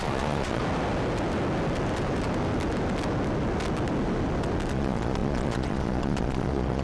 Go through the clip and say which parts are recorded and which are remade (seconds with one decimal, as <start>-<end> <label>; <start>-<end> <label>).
0.0-0.6 remade; 0.6-4.7 recorded; 4.7-6.8 remade